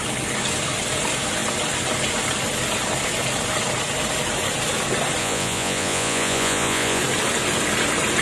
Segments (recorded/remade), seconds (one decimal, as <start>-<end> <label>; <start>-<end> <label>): 0.0-5.2 recorded; 5.2-7.0 remade; 7.0-8.2 recorded